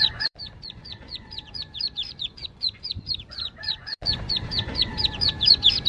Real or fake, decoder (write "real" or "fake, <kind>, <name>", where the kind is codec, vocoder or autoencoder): fake, vocoder, Vocos